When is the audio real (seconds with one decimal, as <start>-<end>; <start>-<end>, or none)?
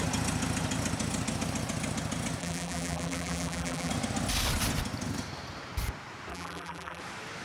0.0-2.4; 3.9-6.3; 7.0-7.4